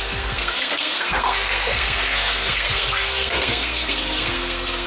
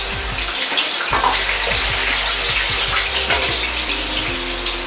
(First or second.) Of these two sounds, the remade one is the first